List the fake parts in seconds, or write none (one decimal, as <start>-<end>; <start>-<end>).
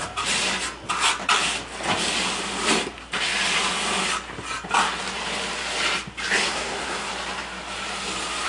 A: 6.4-7.1